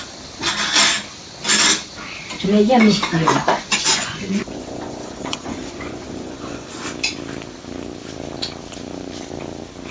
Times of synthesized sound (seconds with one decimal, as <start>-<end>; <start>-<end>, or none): 3.1-6.7